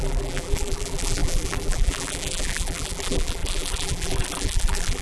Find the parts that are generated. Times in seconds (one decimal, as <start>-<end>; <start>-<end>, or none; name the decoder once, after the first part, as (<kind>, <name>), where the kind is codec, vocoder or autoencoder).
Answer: 0.0-5.0 (vocoder, BigVGAN v2)